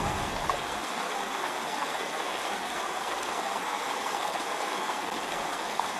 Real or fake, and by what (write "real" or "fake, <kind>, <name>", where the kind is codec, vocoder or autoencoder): fake, codec, SNAC